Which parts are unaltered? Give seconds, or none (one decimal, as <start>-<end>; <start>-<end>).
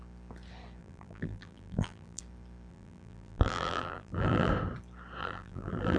0.0-0.8; 2.2-2.7; 4.5-5.2